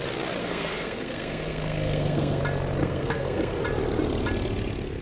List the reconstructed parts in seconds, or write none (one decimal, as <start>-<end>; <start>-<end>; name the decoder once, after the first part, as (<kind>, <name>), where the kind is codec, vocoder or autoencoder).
0.4-2.4 (codec, SNAC); 2.8-3.6